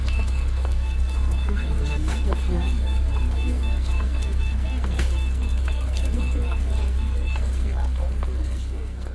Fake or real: fake